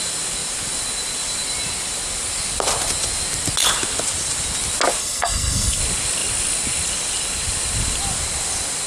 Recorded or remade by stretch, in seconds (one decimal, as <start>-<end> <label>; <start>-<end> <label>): 0.0-5.0 recorded; 5.0-5.8 remade; 5.8-8.9 recorded